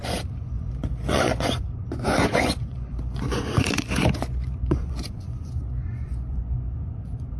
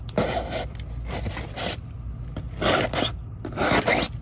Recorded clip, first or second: second